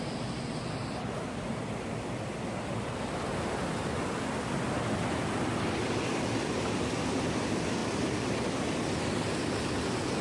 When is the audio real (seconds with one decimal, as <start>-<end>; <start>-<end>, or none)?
0.0-10.2